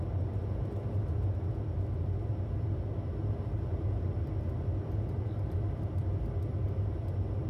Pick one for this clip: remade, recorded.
recorded